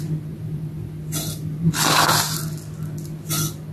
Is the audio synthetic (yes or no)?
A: no